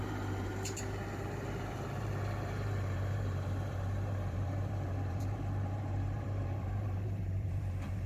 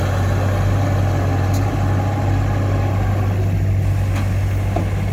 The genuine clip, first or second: second